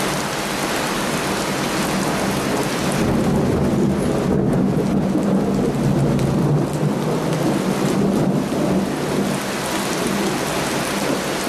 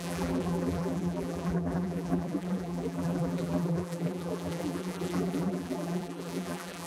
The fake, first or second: second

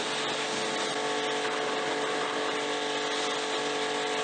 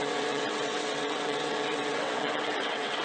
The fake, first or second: second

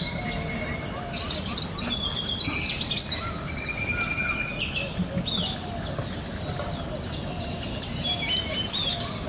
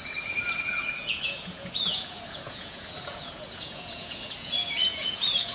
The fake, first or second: second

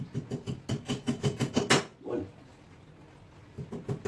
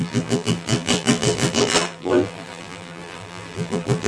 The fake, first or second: second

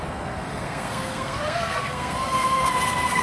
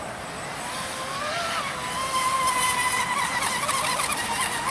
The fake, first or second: first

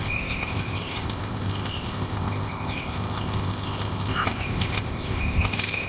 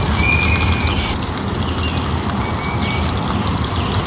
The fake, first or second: first